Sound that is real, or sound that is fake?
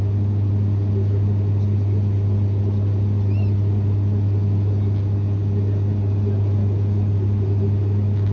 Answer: real